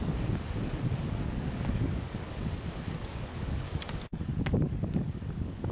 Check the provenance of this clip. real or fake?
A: fake